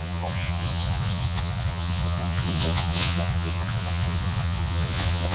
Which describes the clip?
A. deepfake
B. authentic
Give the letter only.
A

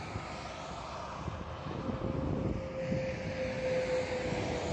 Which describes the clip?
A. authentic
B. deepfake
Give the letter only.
A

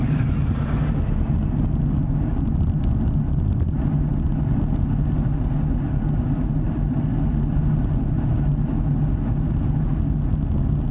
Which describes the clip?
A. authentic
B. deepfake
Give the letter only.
A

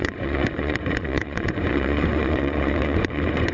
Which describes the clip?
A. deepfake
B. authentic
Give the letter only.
A